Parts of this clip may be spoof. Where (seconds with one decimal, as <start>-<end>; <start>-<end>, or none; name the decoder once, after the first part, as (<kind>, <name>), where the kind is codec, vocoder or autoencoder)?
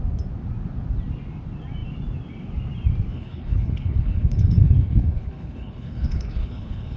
3.1-7.0 (codec, HILCodec)